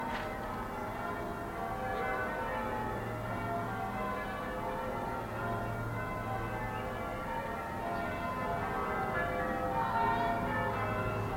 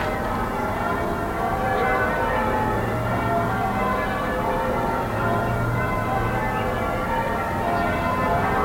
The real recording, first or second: first